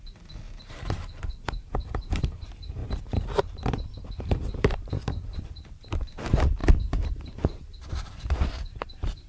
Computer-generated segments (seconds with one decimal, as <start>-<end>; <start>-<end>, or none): 0.0-2.8; 4.2-9.3